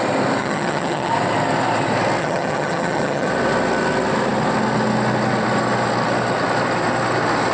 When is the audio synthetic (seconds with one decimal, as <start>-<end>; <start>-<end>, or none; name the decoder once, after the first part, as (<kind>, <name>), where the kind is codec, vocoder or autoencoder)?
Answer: 0.4-1.1 (vocoder, HiFi-GAN); 2.2-3.3